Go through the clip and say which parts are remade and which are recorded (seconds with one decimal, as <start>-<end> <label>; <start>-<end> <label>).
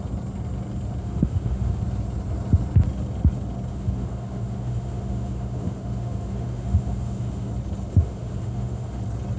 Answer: 0.0-1.0 recorded; 1.0-1.8 remade; 1.8-3.7 recorded; 3.7-7.5 remade; 7.5-7.9 recorded; 7.9-9.0 remade; 9.0-9.4 recorded